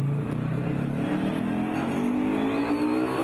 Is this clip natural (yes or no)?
yes